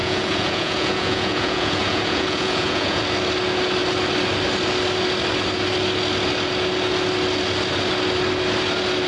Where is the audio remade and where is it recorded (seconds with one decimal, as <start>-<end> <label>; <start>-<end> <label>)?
0.0-3.0 remade; 3.0-9.1 recorded